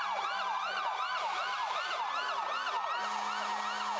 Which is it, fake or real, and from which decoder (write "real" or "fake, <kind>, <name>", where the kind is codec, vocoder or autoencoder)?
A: real